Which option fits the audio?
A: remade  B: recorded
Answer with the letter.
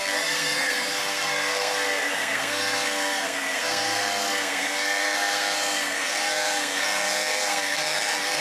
A